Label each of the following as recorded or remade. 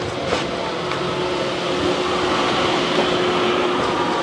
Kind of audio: recorded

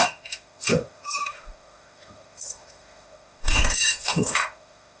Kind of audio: remade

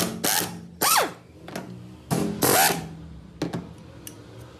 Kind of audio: recorded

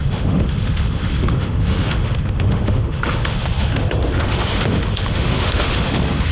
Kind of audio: remade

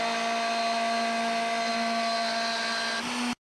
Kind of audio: recorded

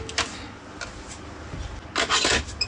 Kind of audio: recorded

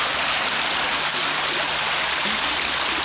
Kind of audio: recorded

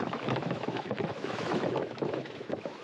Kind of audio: remade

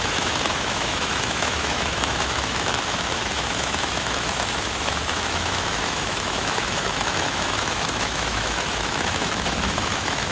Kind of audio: remade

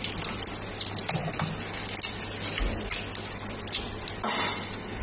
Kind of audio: recorded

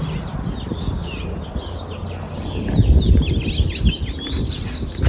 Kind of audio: recorded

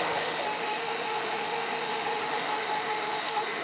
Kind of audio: remade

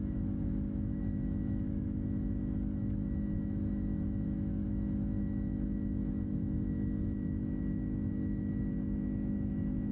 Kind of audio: remade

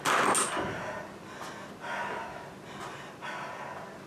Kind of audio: recorded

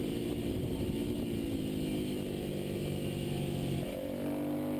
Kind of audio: recorded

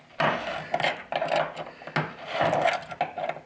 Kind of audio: recorded